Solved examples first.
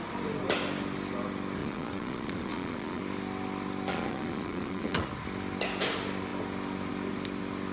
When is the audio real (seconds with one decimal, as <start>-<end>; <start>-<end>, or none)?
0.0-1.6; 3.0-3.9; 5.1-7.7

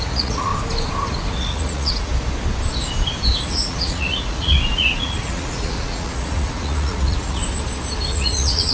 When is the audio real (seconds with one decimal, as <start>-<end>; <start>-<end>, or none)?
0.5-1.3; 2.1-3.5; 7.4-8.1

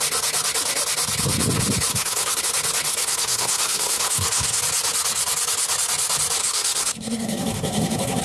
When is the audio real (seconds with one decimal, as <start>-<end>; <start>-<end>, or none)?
0.0-1.9; 2.4-2.9; 4.6-6.4

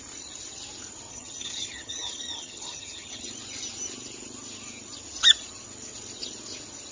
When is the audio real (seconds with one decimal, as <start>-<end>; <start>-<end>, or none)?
0.0-1.1; 3.3-6.9